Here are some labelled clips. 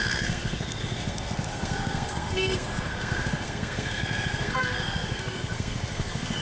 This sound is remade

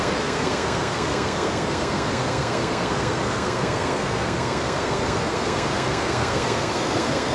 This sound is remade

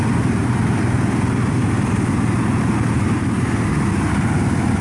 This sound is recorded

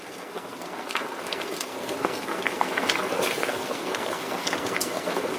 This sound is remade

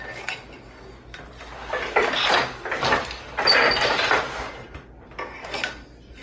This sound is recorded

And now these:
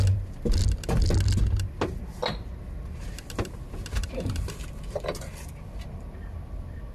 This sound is recorded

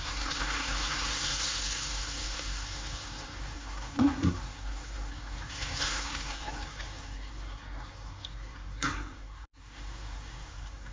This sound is remade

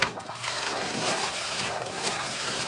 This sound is remade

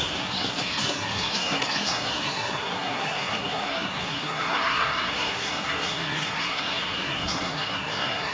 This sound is remade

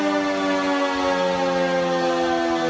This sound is recorded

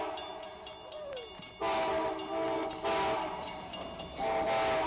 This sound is recorded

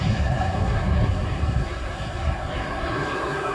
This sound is remade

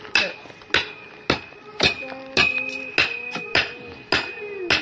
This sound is recorded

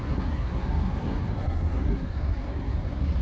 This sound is remade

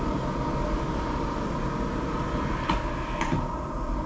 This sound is recorded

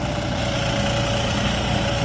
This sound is recorded